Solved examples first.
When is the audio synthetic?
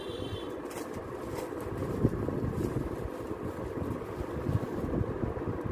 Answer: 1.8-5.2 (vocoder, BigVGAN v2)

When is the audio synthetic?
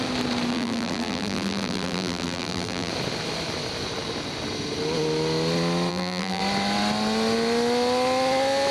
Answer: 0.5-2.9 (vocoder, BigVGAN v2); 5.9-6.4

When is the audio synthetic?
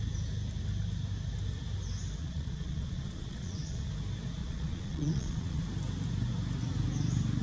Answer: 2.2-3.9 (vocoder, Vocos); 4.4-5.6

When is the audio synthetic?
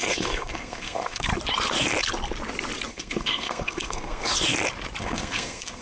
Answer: 0.0-1.3 (codec, SNAC); 2.9-4.3; 5.0-5.8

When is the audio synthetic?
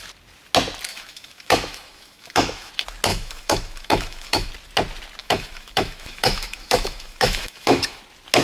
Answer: 0.9-2.7 (autoencoder, DAC-VAE); 3.1-4.5; 5.2-8.0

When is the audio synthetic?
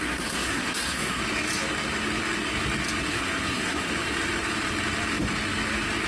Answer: 0.0-1.2 (codec, SNAC); 3.1-3.9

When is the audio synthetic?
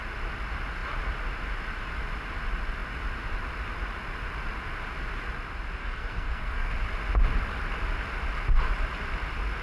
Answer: 5.8-6.7 (codec, SNAC)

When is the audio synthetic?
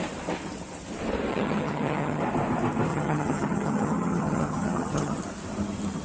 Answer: 1.3-2.2 (vocoder, HiFi-GAN); 2.9-5.2